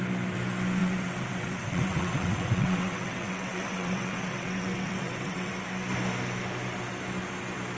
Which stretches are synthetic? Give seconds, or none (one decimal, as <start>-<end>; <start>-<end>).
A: 0.8-5.5